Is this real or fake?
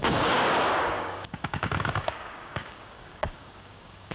fake